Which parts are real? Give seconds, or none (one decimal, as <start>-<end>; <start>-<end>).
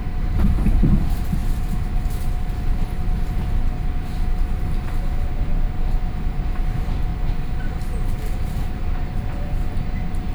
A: 1.4-2.1; 5.5-6.5; 7.1-7.6